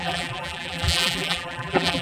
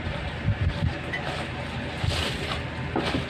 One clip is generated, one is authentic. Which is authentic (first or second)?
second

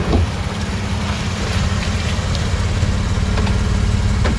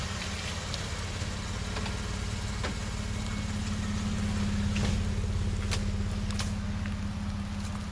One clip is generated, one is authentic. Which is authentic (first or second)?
second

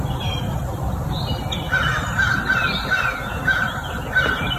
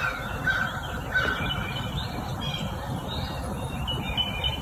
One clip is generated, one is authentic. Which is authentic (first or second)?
first